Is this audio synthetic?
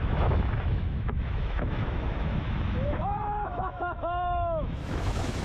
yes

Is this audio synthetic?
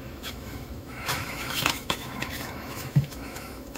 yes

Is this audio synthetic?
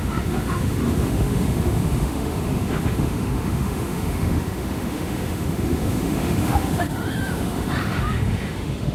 yes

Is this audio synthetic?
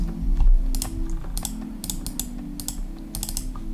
no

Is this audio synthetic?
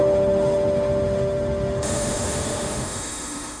yes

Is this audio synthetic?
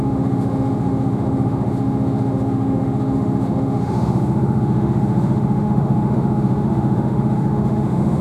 yes